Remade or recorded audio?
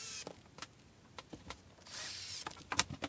recorded